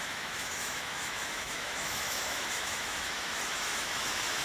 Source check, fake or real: fake